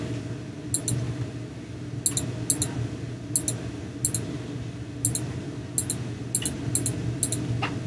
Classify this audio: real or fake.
real